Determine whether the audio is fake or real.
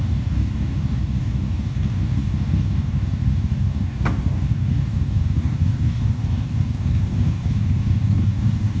fake